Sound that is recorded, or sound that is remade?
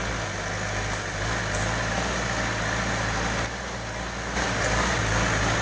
recorded